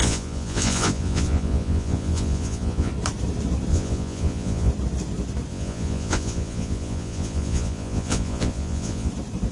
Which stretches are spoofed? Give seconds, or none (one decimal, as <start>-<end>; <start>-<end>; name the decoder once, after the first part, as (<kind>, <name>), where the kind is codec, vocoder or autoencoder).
0.0-2.9 (vocoder, Vocos); 3.7-4.7; 5.5-9.1